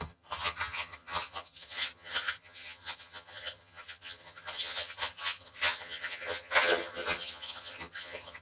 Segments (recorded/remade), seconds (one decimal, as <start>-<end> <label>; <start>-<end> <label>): 0.0-8.4 remade